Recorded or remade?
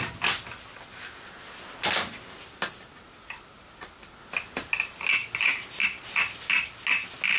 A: recorded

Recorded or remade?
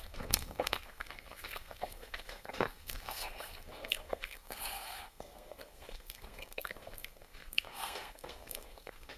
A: remade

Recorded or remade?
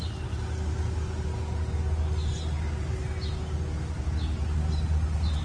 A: recorded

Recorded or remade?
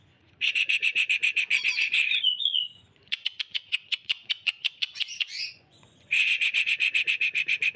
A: remade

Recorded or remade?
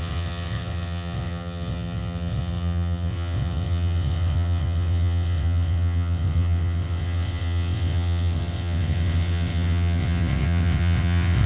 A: remade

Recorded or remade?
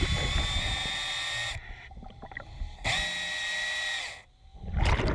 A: recorded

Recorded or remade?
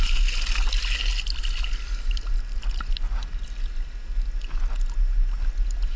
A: recorded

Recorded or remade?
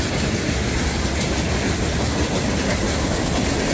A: recorded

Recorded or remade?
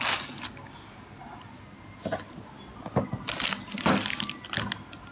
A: recorded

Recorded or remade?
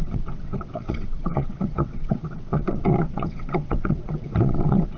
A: remade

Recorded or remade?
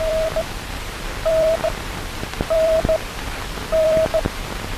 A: remade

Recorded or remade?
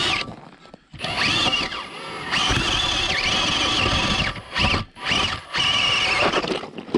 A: recorded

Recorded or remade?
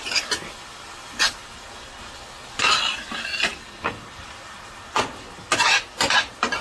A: recorded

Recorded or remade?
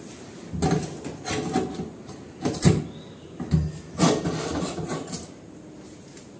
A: recorded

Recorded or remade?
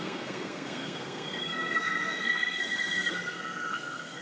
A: remade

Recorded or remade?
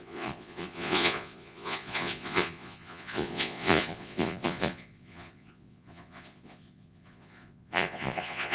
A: remade